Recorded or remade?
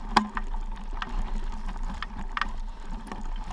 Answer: recorded